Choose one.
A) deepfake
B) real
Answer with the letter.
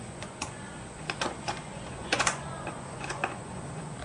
A